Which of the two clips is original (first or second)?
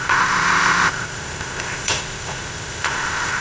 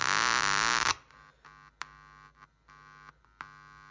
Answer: second